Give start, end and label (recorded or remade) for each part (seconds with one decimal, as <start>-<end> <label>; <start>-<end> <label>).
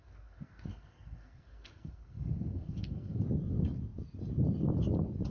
0.0-3.2 remade; 3.2-5.3 recorded